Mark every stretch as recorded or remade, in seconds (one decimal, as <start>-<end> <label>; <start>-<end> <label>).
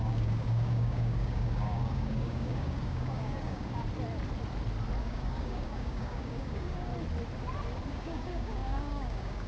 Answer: 0.0-3.8 remade; 3.8-5.0 recorded; 5.0-6.9 remade; 6.9-7.9 recorded; 7.9-9.5 remade